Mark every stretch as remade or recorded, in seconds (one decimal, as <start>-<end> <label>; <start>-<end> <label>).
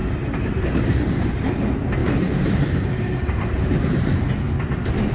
0.0-1.3 remade; 1.3-2.0 recorded; 2.0-4.3 remade; 4.3-5.1 recorded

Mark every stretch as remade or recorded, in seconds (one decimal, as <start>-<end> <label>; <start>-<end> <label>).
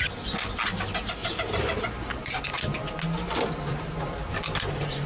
0.0-1.2 recorded; 1.2-2.8 remade; 2.8-3.7 recorded; 3.7-5.1 remade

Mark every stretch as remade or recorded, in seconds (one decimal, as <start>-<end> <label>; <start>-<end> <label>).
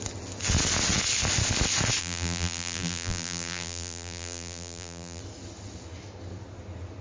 0.0-2.0 recorded; 2.0-5.2 remade; 5.2-7.0 recorded